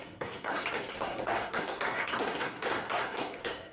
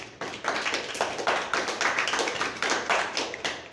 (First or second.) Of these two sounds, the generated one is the first